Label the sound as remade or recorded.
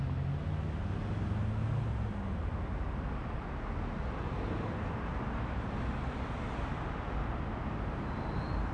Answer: recorded